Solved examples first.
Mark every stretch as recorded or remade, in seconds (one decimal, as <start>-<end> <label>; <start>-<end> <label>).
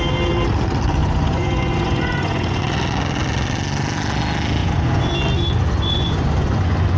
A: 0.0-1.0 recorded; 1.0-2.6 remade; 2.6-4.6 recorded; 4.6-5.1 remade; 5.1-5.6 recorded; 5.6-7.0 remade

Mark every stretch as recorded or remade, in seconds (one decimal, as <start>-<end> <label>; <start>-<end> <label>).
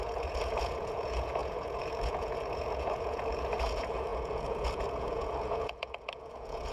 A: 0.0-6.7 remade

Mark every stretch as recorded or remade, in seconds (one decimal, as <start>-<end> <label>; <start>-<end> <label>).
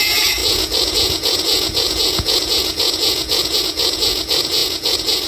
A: 0.0-5.3 remade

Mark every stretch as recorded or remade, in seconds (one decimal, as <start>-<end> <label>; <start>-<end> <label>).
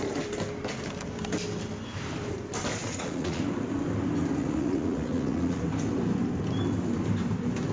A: 0.0-2.8 recorded; 2.8-3.4 remade; 3.4-4.4 recorded; 4.4-5.6 remade; 5.6-7.7 recorded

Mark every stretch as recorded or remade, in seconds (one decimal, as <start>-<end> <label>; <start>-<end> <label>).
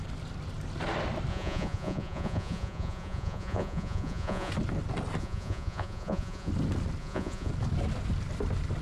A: 0.0-1.3 recorded; 1.3-4.5 remade; 4.5-5.2 recorded; 5.2-6.5 remade; 6.5-7.0 recorded; 7.0-7.5 remade; 7.5-8.8 recorded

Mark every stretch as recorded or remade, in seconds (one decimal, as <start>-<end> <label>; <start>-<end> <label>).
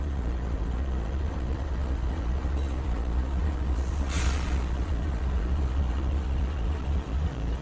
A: 0.0-7.6 remade